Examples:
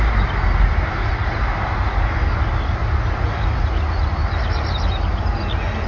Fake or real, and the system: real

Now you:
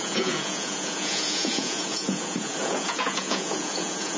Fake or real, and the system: fake, vocoder, Vocos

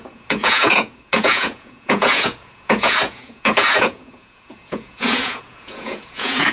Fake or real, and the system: fake, vocoder, Vocos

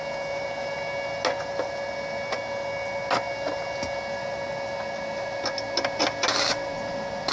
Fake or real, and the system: real